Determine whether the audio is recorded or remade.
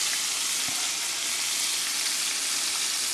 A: recorded